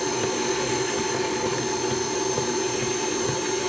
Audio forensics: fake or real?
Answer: real